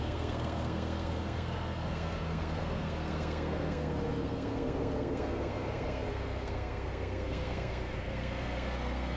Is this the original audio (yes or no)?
no